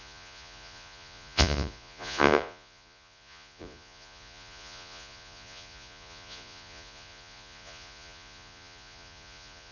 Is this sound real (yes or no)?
no